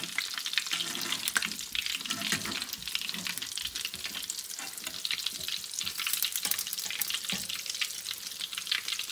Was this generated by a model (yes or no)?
no